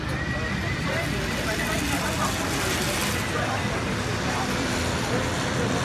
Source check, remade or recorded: recorded